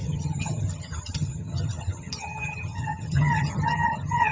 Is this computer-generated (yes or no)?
yes